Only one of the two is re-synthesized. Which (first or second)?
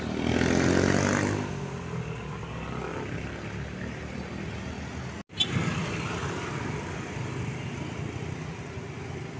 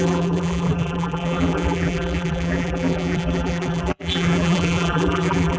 second